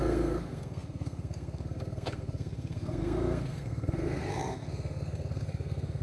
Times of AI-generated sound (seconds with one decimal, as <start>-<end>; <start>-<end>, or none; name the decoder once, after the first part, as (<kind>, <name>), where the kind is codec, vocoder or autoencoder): 0.0-6.0 (codec, SNAC)